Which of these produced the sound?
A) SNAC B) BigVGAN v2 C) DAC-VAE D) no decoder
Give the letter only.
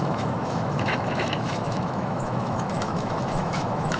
C